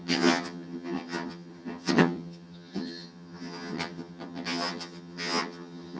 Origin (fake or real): fake